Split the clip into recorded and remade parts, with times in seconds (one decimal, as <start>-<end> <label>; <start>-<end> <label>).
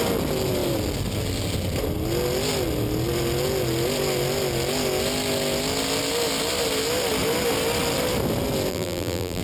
0.0-8.7 recorded; 8.7-9.4 remade